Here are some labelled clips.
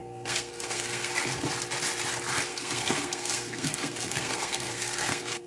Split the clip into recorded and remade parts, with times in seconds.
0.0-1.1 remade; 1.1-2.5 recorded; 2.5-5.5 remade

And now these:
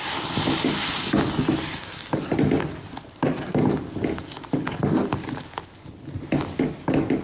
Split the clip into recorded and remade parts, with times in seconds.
0.0-7.2 recorded

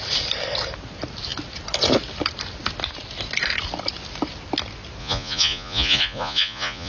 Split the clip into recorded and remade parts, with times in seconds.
0.0-5.0 recorded; 5.0-6.9 remade

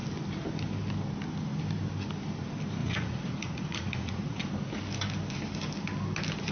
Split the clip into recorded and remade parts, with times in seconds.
0.0-2.8 recorded; 2.8-4.5 remade; 4.5-6.5 recorded

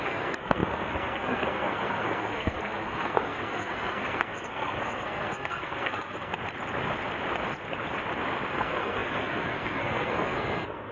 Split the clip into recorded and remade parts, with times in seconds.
0.0-6.3 remade; 6.3-8.5 recorded; 8.5-10.9 remade